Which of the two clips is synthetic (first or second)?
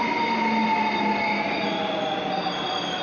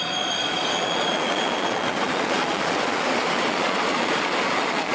second